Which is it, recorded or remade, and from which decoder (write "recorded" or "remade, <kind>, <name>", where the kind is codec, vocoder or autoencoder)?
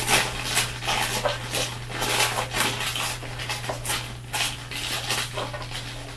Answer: recorded